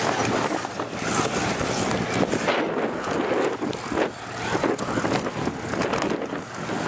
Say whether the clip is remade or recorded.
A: recorded